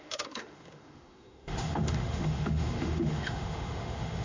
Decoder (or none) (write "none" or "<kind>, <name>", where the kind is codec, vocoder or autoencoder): autoencoder, DAC-VAE